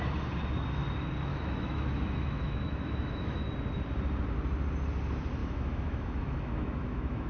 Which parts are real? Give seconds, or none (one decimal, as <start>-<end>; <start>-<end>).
0.0-1.3; 3.4-5.4